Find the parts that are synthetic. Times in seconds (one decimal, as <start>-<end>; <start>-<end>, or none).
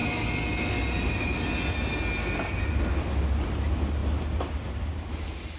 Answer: none